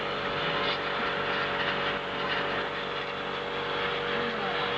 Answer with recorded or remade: recorded